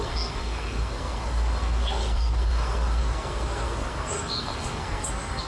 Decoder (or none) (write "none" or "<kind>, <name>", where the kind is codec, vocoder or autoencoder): codec, SNAC